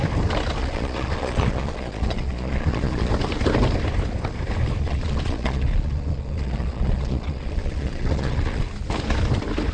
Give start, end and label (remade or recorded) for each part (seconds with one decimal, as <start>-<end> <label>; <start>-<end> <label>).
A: 0.0-0.6 recorded; 0.6-3.1 remade; 3.1-4.8 recorded; 4.8-8.6 remade; 8.6-9.7 recorded